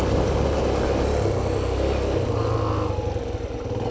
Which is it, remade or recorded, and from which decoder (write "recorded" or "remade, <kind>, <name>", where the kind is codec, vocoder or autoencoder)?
recorded